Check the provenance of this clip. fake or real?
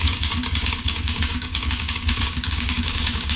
fake